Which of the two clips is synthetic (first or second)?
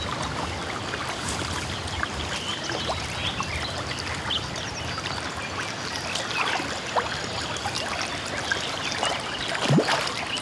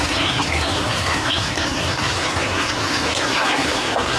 second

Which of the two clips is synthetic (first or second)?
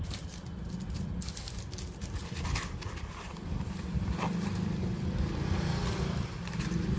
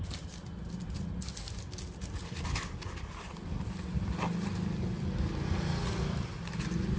first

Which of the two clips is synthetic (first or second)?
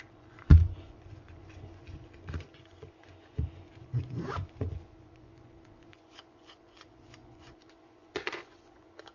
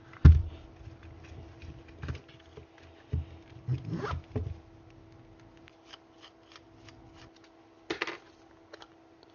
first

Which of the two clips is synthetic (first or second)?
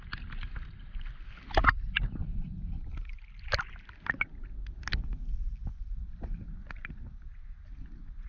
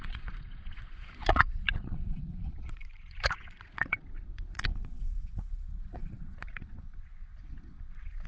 second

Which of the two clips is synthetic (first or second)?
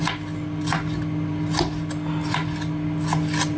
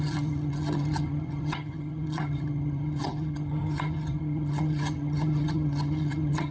second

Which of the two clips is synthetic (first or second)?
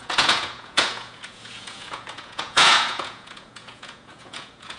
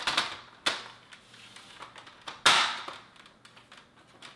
first